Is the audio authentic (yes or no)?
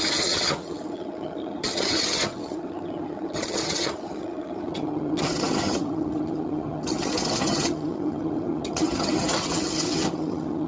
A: no